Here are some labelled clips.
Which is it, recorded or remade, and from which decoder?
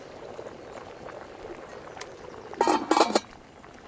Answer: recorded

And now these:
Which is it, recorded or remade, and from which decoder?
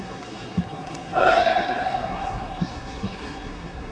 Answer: remade, codec, SNAC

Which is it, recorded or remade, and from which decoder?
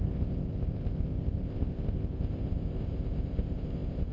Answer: remade, codec, ZipCodec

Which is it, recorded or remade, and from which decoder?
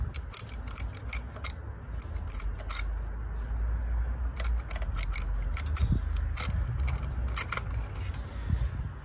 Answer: recorded